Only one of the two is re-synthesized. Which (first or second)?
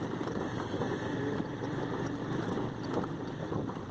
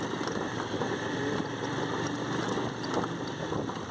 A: first